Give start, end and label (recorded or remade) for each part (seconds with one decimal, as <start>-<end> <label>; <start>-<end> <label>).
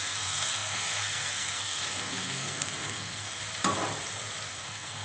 0.0-3.4 remade; 3.4-4.5 recorded; 4.5-5.0 remade